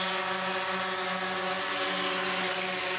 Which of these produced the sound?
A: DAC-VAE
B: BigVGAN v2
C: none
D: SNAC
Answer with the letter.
C